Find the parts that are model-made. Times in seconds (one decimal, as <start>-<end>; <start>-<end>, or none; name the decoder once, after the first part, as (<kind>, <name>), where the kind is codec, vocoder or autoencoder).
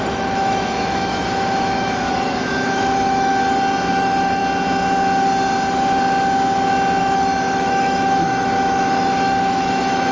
0.0-3.3 (autoencoder, DAC-VAE); 3.9-4.4; 7.0-10.1